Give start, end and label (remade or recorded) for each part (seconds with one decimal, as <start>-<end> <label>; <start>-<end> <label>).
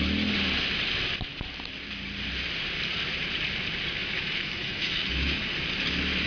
0.0-4.0 recorded; 4.0-5.4 remade; 5.4-6.3 recorded